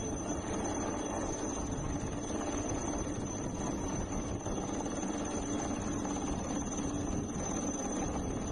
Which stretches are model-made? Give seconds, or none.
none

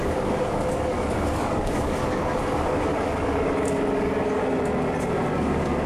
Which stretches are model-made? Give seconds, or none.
0.0-4.4; 5.3-5.9

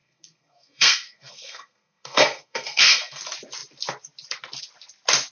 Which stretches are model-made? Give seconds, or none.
0.0-3.2

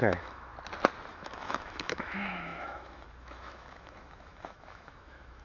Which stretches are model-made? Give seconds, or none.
0.0-0.5; 1.1-5.4

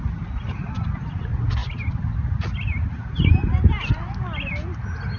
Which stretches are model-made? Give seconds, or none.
none

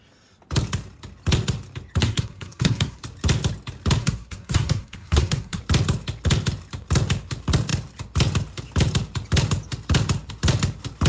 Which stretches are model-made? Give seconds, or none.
2.0-3.0; 4.0-5.6

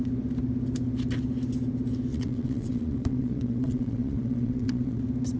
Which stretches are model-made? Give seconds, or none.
2.1-5.0

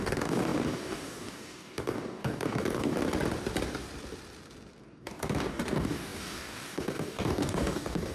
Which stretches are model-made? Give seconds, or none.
0.0-3.0; 4.8-8.1